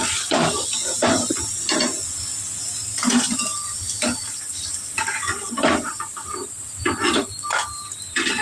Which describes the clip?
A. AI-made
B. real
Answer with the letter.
B